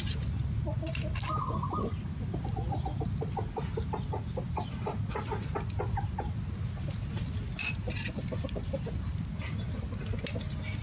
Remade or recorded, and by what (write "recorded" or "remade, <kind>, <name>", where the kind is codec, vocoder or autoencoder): recorded